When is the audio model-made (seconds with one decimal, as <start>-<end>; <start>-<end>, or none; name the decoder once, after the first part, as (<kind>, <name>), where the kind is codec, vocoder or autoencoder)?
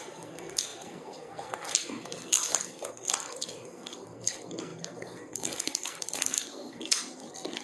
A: 0.0-7.6 (codec, SNAC)